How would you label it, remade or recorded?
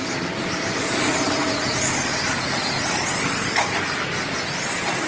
recorded